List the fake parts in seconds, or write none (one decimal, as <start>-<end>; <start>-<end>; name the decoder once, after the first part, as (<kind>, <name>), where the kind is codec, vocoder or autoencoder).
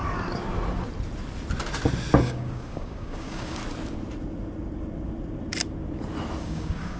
2.2-3.6 (codec, DAC); 6.4-7.0